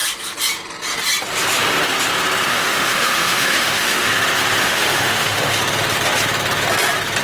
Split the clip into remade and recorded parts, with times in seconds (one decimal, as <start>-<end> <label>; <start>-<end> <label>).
0.0-2.5 recorded; 2.5-4.1 remade; 4.1-4.6 recorded; 4.6-5.6 remade; 5.6-7.2 recorded